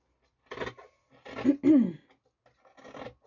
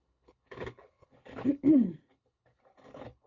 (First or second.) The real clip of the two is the first